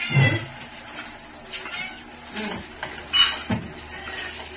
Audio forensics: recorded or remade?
recorded